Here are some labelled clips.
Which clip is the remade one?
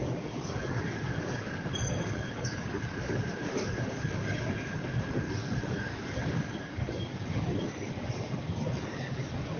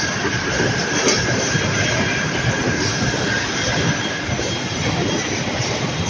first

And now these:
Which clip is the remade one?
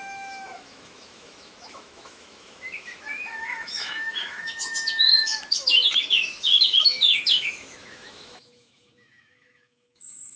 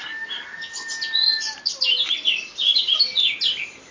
first